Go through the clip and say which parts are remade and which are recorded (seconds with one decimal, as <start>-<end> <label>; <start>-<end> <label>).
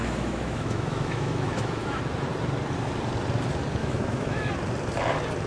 0.0-2.0 remade; 2.0-3.8 recorded; 3.8-4.5 remade; 4.5-5.5 recorded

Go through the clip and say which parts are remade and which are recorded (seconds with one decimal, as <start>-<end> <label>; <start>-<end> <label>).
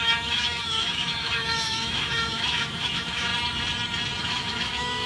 0.0-3.3 remade; 3.3-4.2 recorded; 4.2-5.1 remade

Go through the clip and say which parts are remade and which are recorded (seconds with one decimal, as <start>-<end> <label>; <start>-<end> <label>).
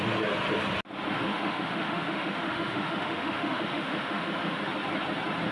0.0-1.3 recorded; 1.3-4.6 remade; 4.6-5.5 recorded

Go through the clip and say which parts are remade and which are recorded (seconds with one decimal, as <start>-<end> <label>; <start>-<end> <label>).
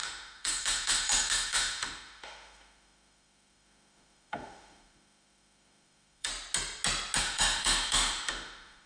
0.0-6.3 remade; 6.3-7.2 recorded; 7.2-8.9 remade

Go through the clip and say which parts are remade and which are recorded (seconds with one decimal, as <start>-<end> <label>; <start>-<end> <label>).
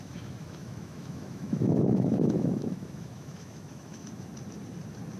0.0-4.3 remade; 4.3-5.2 recorded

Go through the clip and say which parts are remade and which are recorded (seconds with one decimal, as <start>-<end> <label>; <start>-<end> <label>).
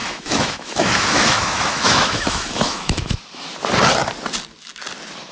0.0-3.2 remade; 3.2-5.3 recorded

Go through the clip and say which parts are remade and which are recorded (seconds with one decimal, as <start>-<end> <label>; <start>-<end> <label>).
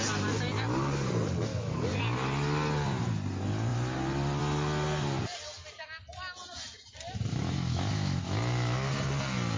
0.0-1.5 recorded; 1.5-2.0 remade; 2.0-7.3 recorded; 7.3-8.9 remade; 8.9-9.6 recorded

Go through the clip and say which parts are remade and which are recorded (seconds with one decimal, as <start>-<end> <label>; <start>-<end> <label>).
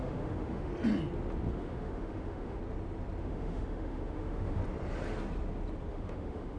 0.0-0.7 remade; 0.7-1.5 recorded; 1.5-2.6 remade; 2.6-3.2 recorded; 3.2-4.6 remade; 4.6-5.9 recorded; 5.9-6.6 remade